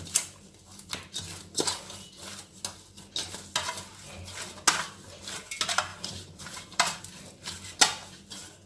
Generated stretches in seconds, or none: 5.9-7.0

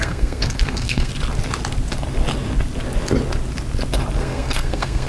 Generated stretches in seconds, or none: 0.0-1.1; 4.2-5.1

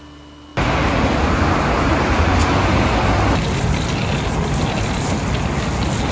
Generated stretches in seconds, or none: none

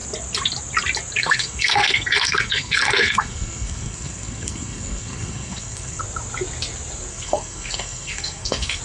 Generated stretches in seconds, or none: 1.2-6.0; 7.1-8.8

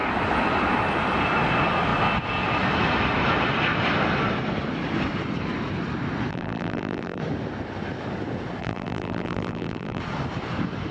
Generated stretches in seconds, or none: 6.3-7.2; 8.6-10.0

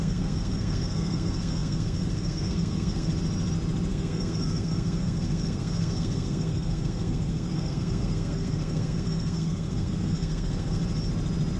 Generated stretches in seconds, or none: 0.0-3.1; 3.9-10.8